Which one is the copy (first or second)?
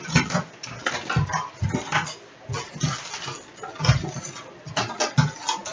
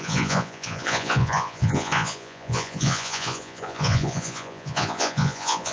second